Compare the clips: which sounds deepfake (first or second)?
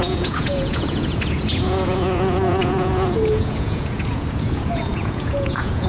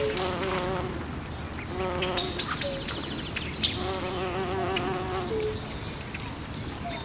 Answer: first